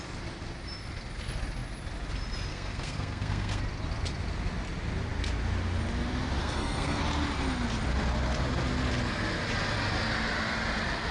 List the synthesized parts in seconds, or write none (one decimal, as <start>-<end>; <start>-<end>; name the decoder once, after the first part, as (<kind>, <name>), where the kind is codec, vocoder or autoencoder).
2.5-3.6 (codec, SNAC); 6.4-7.0